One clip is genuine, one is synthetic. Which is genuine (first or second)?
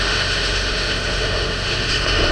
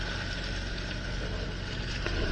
second